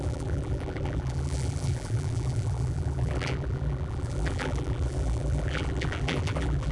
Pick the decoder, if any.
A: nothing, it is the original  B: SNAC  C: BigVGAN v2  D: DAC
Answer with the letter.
C